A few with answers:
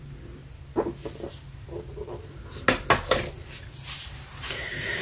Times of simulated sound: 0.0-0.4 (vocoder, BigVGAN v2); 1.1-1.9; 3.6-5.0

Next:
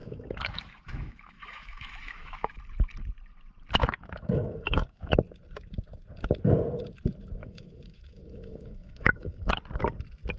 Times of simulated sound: 0.0-2.6 (autoencoder, DAC-VAE); 3.8-5.2; 7.4-9.5